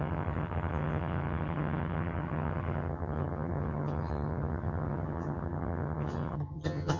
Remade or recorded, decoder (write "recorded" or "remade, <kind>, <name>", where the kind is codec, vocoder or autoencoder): remade, vocoder, HiFi-GAN